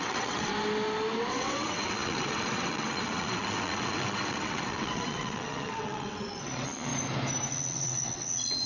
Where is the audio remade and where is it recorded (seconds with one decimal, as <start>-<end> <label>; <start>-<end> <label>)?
0.0-0.5 remade; 0.5-1.3 recorded; 1.3-6.9 remade; 6.9-7.5 recorded; 7.5-8.7 remade